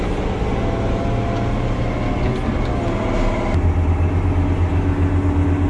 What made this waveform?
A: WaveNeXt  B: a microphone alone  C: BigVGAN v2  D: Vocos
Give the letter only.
B